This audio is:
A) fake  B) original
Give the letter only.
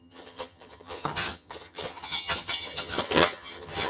A